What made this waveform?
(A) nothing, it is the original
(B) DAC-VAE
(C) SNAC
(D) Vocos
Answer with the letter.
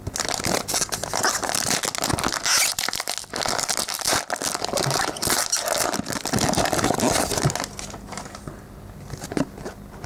A